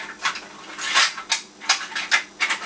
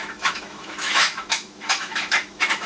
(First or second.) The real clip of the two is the first